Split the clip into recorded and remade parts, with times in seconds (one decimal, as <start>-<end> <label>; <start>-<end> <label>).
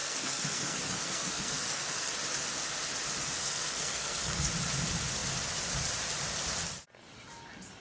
0.0-2.1 remade; 2.1-3.4 recorded; 3.4-4.5 remade; 4.5-7.8 recorded